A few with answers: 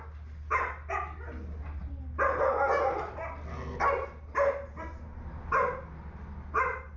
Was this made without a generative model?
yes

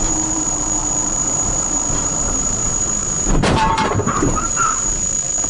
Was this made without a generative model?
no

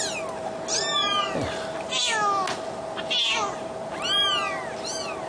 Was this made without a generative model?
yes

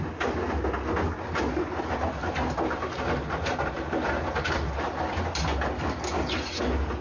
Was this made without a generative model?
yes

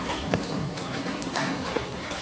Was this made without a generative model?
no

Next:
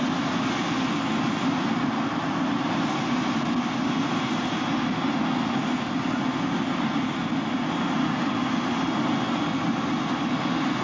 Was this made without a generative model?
yes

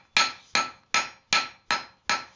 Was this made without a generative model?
yes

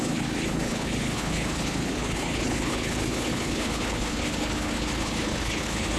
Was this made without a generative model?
no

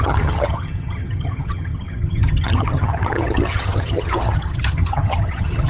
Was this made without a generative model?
no